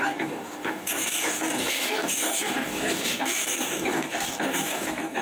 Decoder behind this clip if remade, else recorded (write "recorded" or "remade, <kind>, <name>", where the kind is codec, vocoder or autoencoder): remade, codec, DAC